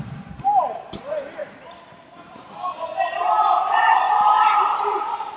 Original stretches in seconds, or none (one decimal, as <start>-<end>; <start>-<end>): 1.4-4.6